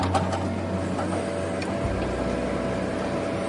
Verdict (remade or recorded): recorded